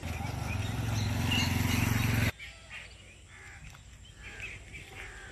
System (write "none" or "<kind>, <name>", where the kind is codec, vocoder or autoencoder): none